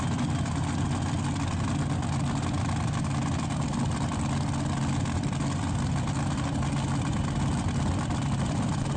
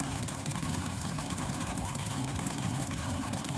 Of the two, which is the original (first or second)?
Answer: first